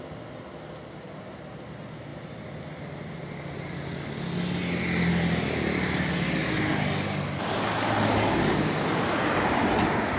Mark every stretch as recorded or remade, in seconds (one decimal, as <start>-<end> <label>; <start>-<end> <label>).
0.0-6.7 recorded; 6.7-9.1 remade; 9.1-10.2 recorded